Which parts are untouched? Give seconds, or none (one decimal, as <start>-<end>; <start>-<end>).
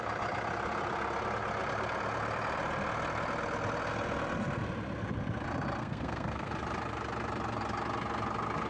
0.0-5.8; 6.5-8.7